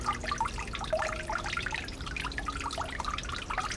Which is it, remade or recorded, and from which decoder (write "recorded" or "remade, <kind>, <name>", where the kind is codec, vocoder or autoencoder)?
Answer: recorded